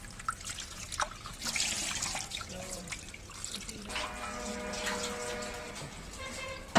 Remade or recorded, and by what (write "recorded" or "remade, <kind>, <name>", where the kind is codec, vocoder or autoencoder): recorded